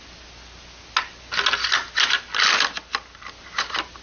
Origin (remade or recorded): recorded